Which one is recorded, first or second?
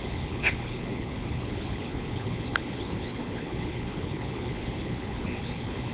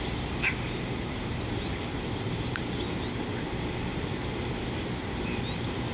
second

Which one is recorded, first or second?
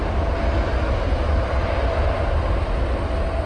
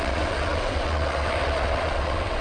first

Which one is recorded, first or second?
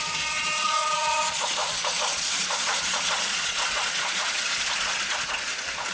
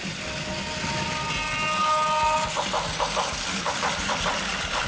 second